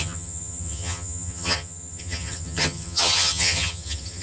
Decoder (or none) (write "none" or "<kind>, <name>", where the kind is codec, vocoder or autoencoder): vocoder, HiFi-GAN